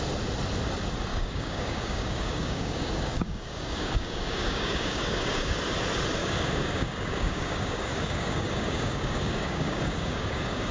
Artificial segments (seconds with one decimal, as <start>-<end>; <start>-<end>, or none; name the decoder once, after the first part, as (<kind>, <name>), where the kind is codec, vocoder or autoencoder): 1.1-5.6 (codec, DAC); 6.2-10.7